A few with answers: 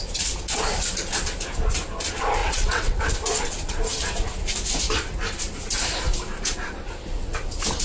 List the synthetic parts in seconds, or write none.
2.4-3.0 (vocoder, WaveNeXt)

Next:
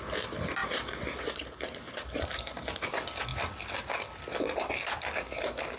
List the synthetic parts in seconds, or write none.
0.6-2.6 (vocoder, BigVGAN v2)

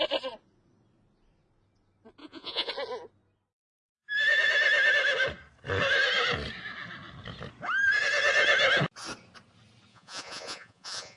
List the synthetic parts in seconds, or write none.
2.2-2.7 (vocoder, Vocos); 9.9-11.2

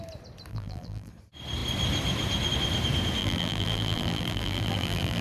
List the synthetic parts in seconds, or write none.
0.5-1.1 (vocoder, BigVGAN v2); 3.2-5.2